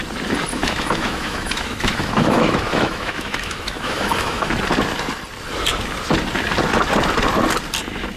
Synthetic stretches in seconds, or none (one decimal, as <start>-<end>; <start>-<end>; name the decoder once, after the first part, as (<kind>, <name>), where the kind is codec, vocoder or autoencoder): 0.5-4.5 (autoencoder, DAC-VAE)

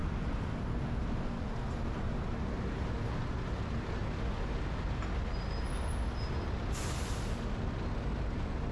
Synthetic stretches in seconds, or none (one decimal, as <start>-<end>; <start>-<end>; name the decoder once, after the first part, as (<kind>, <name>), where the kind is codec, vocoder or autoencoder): none

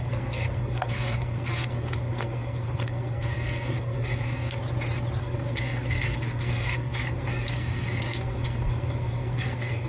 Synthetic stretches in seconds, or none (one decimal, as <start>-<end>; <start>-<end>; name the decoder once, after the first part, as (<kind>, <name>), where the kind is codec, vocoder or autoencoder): 0.0-4.6 (codec, SNAC); 5.2-9.9

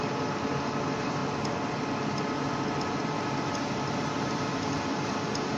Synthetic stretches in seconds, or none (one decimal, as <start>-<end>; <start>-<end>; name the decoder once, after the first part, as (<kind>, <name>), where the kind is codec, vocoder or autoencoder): 1.2-1.8 (vocoder, BigVGAN v2)

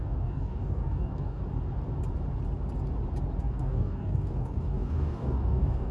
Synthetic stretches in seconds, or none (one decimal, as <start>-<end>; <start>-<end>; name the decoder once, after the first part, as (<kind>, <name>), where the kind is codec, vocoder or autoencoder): 0.0-1.4 (codec, DAC); 3.4-5.9

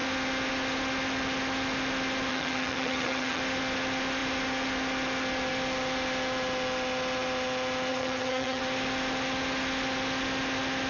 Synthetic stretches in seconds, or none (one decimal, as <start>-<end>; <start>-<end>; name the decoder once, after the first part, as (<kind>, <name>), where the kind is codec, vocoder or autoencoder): 2.3-3.4 (vocoder, HiFi-GAN); 7.9-8.6

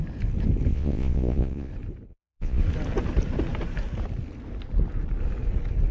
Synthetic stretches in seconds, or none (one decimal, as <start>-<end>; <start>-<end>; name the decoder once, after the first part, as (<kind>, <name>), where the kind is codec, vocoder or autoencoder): 0.7-1.7 (vocoder, Vocos); 2.1-2.6

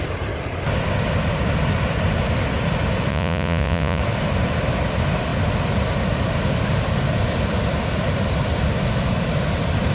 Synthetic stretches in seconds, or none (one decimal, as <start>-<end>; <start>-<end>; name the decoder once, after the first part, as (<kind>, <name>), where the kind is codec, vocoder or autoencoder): 3.1-4.0 (vocoder, Vocos)